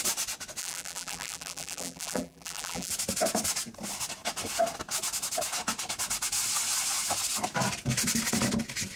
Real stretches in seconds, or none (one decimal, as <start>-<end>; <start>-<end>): 0.0-0.6; 2.9-9.0